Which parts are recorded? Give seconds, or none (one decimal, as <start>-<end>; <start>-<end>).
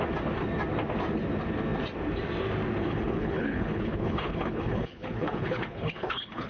0.0-2.8